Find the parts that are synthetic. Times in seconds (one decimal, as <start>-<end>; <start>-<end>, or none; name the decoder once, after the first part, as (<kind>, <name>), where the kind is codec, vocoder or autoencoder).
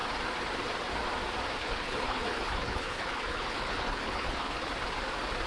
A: 1.6-4.7 (codec, HILCodec)